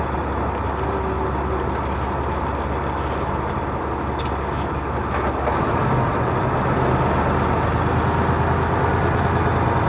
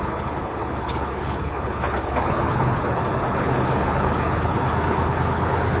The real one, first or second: first